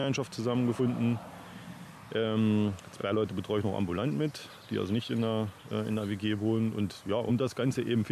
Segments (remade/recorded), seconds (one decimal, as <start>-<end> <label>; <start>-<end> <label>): 0.0-8.1 recorded